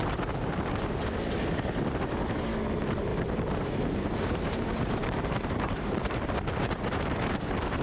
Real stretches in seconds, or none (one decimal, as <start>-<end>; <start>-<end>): 0.0-3.1